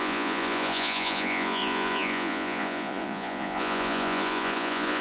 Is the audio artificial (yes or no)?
yes